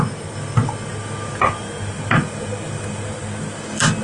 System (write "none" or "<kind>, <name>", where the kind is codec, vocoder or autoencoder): vocoder, BigVGAN v2